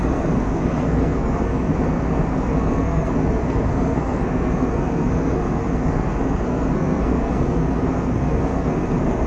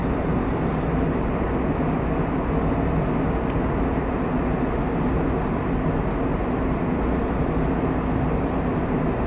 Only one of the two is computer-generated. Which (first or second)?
first